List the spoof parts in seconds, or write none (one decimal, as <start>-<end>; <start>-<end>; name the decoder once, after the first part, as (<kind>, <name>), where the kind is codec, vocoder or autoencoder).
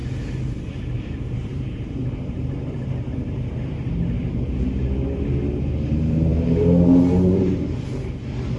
0.0-3.6 (vocoder, BigVGAN v2); 6.3-7.5